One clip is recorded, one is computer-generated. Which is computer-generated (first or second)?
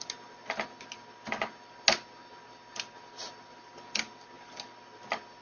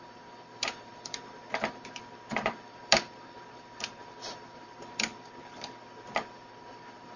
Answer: second